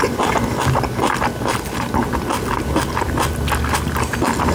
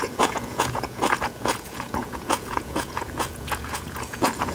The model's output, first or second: second